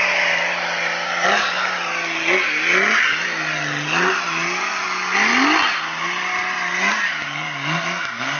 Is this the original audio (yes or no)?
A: yes